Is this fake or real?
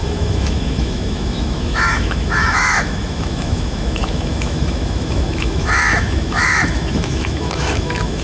fake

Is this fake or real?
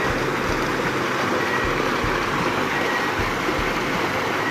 real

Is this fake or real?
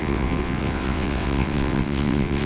fake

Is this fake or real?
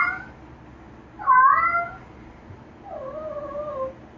real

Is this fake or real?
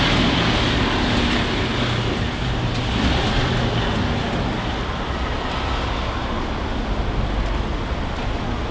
real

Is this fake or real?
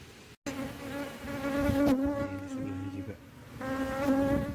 real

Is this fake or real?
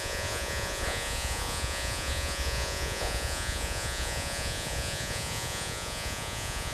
fake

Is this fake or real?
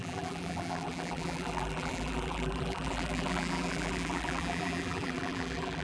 fake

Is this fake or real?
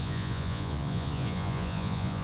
fake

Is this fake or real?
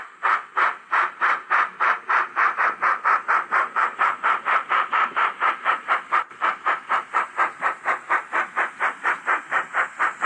fake